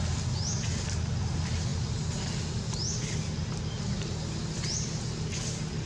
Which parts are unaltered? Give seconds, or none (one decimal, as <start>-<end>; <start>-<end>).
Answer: 0.0-5.9